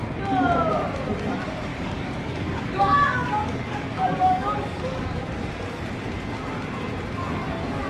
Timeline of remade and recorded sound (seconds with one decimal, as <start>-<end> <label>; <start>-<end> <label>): 0.0-1.7 recorded; 1.7-5.2 remade; 5.2-7.9 recorded